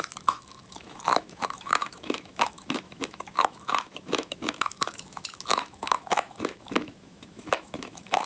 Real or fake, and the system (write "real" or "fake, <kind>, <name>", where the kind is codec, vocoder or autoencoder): fake, autoencoder, DAC-VAE